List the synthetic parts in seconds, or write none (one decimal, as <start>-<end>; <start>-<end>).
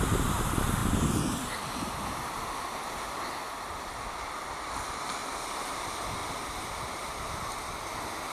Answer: 5.2-5.8; 6.2-7.5